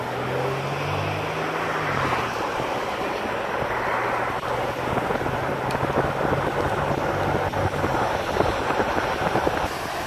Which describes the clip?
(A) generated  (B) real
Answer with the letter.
B